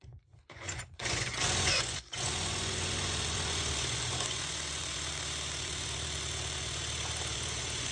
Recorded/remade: remade